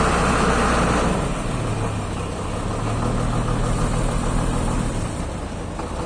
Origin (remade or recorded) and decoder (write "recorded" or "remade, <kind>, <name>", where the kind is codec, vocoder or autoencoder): recorded